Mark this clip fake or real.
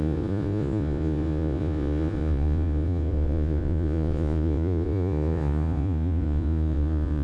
fake